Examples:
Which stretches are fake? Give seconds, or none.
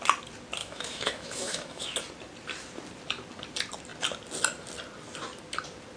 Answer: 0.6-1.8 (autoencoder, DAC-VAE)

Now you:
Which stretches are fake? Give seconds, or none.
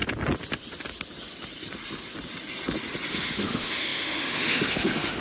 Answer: 3.1-5.2 (autoencoder, DAC-VAE)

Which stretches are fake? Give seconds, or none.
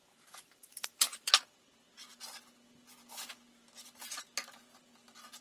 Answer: 0.0-1.3 (vocoder, BigVGAN v2)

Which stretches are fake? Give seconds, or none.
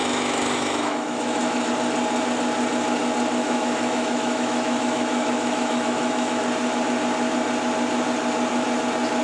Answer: 0.0-1.7 (autoencoder, DAC-VAE); 3.4-6.4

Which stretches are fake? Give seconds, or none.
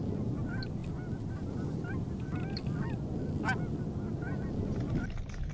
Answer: none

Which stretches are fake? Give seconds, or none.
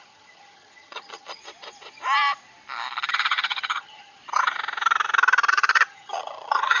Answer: 0.0-1.4 (vocoder, HiFi-GAN); 3.1-4.2; 5.5-6.8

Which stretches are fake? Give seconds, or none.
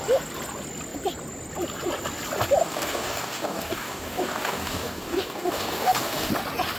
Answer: 2.6-6.3 (codec, DAC)